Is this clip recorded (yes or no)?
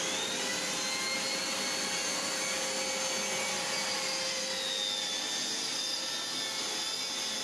yes